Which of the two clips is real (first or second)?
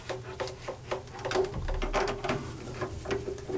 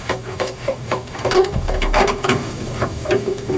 first